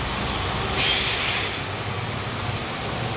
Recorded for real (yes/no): yes